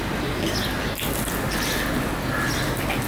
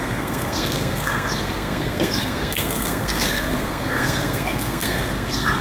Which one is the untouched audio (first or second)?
first